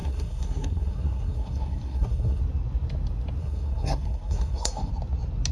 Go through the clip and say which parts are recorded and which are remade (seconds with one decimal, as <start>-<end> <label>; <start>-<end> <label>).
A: 0.0-2.4 remade; 2.4-3.4 recorded; 3.4-4.9 remade; 4.9-5.5 recorded